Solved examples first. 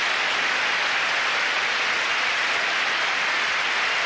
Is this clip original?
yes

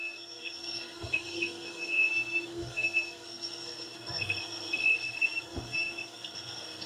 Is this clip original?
no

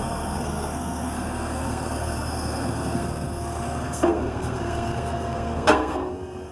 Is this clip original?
no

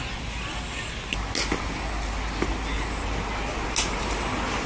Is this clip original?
yes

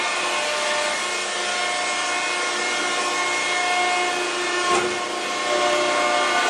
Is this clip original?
yes